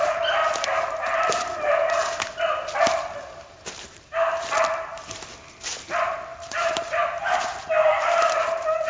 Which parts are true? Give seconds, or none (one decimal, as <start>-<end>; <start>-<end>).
2.0-3.2